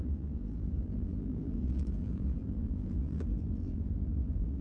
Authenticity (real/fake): fake